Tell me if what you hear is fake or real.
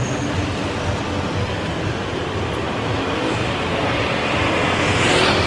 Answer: real